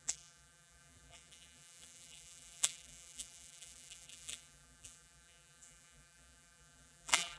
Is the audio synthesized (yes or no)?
yes